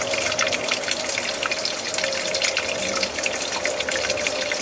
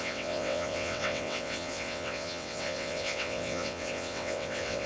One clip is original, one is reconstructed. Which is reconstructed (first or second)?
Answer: second